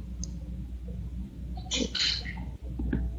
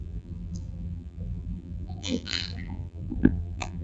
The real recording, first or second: first